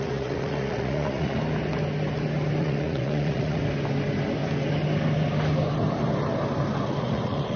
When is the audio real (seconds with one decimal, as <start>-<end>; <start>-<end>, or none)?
1.4-2.6; 3.6-7.0